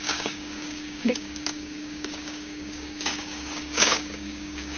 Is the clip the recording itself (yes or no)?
no